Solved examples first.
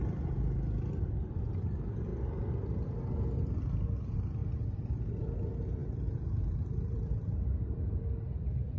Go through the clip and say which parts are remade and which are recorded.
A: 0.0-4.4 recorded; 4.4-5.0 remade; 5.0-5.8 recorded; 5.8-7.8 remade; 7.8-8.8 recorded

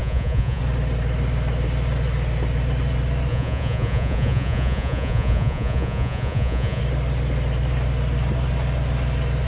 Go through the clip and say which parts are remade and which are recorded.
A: 0.0-0.6 remade; 0.6-3.3 recorded; 3.3-6.8 remade; 6.8-9.5 recorded

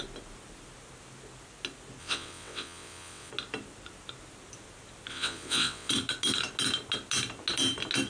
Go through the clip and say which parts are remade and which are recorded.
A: 0.0-2.0 recorded; 2.0-3.3 remade; 3.3-5.1 recorded; 5.1-5.9 remade; 5.9-8.1 recorded